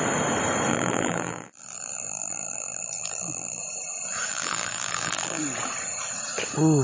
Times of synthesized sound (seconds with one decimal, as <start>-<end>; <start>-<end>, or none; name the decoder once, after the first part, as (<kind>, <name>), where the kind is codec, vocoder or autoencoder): 0.7-3.6 (vocoder, BigVGAN v2); 4.3-5.4